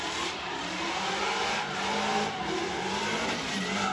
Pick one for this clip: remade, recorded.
remade